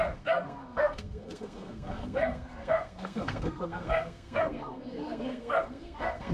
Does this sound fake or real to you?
fake